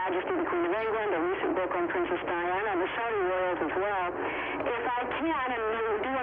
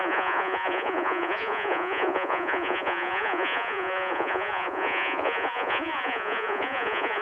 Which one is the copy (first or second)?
second